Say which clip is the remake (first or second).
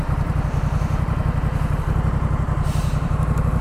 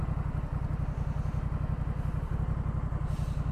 first